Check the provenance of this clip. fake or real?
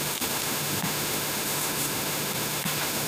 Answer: fake